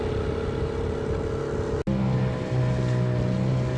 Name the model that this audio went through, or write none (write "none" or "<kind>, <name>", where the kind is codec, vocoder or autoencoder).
none